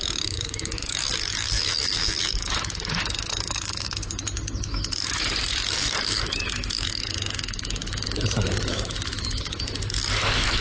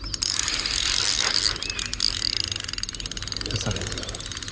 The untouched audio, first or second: second